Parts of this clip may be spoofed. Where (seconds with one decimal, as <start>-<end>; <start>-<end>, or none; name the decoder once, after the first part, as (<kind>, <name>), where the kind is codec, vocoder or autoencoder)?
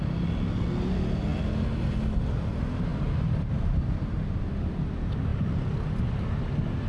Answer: none